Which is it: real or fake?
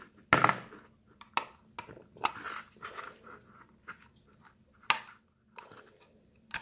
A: real